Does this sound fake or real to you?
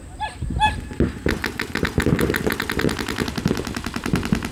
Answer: real